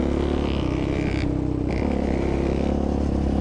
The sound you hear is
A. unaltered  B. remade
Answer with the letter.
A